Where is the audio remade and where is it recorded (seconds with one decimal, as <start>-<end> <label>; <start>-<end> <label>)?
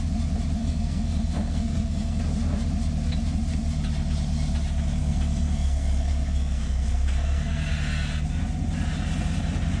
0.0-0.6 recorded; 0.6-2.2 remade; 2.2-5.0 recorded; 5.0-7.7 remade; 7.7-9.8 recorded